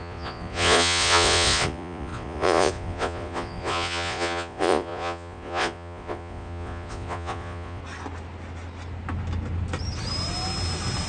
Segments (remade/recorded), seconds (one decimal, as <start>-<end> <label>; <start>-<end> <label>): 0.0-7.8 remade; 7.8-11.1 recorded

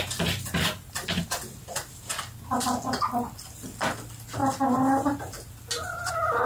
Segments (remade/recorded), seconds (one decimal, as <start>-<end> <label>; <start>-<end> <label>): 0.0-6.5 recorded

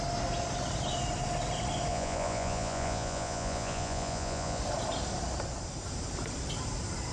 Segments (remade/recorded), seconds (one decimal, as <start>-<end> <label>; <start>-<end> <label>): 0.0-1.9 recorded; 1.9-4.6 remade; 4.6-7.1 recorded

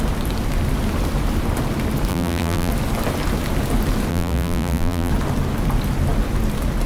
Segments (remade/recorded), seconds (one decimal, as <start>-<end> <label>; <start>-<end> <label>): 0.0-2.1 recorded; 2.1-2.7 remade; 2.7-4.1 recorded; 4.1-5.1 remade; 5.1-6.9 recorded

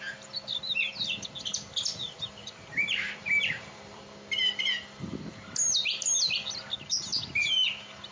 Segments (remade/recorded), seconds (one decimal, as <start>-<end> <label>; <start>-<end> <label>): 0.0-2.0 recorded; 2.0-4.0 remade; 4.0-8.1 recorded

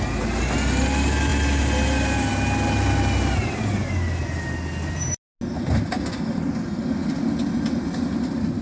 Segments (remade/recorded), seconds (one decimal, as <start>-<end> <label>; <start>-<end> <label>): 0.0-8.6 recorded